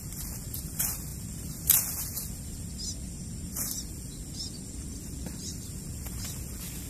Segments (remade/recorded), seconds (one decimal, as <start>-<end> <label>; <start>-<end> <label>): 0.0-6.9 recorded